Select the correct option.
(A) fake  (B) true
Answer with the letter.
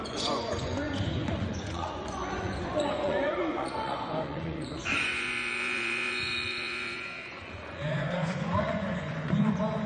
A